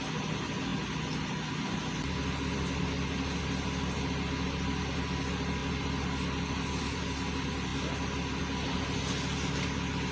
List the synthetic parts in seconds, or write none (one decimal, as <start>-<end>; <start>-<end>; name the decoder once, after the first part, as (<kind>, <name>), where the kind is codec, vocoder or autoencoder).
none